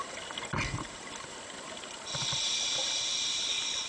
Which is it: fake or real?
real